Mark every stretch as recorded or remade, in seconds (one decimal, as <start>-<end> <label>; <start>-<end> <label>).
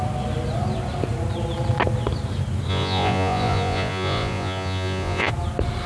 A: 0.0-2.7 recorded; 2.7-5.3 remade; 5.3-5.9 recorded